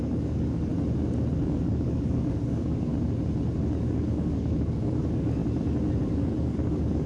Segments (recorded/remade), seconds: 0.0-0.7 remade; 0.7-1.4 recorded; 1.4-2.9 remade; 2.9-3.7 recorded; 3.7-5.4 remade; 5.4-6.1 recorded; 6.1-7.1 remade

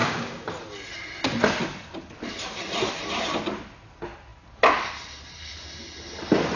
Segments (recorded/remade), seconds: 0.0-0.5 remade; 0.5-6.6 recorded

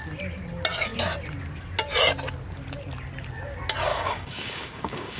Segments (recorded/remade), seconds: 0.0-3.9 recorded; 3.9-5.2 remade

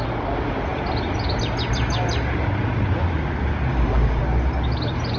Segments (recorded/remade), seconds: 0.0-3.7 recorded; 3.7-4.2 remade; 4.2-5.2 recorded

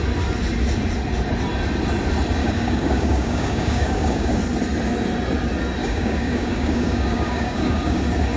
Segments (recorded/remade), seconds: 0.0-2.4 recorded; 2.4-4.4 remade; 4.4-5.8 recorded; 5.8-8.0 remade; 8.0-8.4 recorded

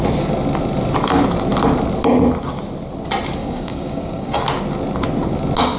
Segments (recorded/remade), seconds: 0.0-3.4 recorded; 3.4-4.4 remade; 4.4-5.8 recorded